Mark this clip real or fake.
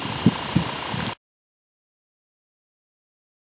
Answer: real